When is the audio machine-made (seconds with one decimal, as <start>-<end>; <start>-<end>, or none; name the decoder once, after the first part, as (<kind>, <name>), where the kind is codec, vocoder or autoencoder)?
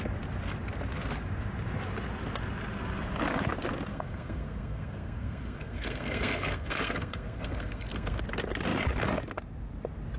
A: 3.9-8.2 (codec, SNAC)